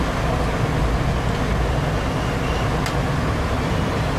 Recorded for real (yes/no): yes